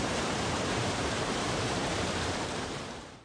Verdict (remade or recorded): remade